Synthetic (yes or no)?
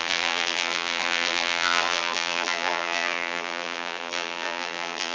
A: yes